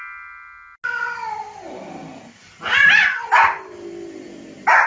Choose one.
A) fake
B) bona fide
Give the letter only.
B